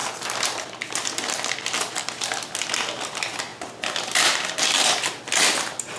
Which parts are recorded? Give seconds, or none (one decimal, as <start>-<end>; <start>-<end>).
0.0-6.0